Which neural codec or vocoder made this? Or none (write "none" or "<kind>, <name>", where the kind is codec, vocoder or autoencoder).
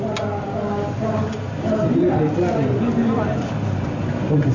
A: none